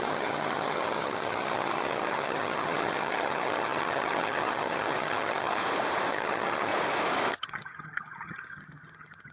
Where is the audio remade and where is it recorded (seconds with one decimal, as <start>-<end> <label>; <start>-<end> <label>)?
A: 0.0-5.6 remade; 5.6-6.1 recorded; 6.1-6.7 remade; 6.7-7.3 recorded; 7.3-9.3 remade